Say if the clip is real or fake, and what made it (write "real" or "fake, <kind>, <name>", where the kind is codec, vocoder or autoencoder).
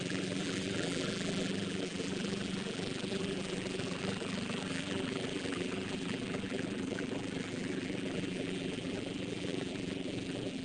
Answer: fake, vocoder, BigVGAN v2